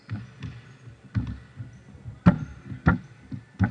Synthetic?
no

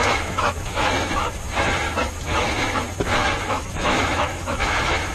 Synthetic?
yes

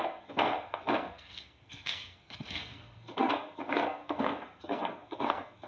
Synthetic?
yes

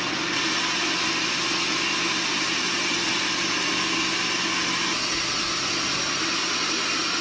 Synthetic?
no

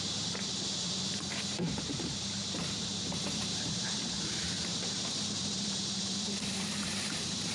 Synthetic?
yes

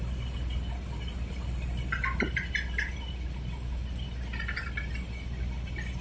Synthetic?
no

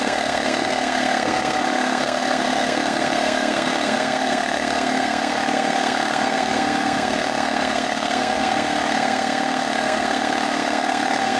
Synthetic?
yes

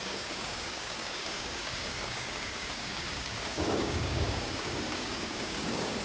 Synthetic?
yes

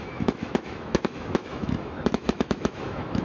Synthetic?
yes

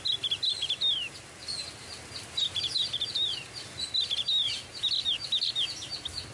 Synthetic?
no